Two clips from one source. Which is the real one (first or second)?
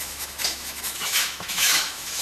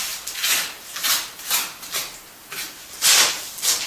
second